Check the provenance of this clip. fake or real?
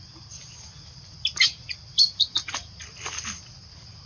real